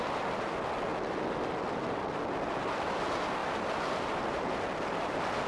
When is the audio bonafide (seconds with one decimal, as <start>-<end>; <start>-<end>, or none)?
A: 0.0-3.4; 4.6-5.5